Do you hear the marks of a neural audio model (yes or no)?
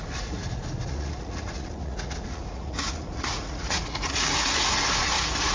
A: yes